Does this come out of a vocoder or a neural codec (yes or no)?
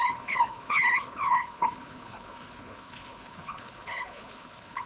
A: yes